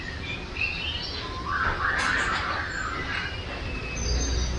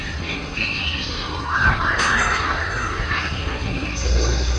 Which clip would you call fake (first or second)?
second